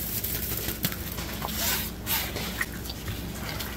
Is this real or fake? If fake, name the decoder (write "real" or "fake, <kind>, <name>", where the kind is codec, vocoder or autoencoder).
real